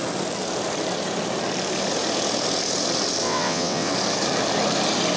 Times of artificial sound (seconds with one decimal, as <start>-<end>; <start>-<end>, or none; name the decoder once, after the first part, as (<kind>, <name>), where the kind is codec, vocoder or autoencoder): 3.2-3.9 (vocoder, WaveNeXt)